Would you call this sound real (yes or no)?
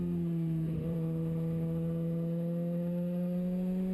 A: no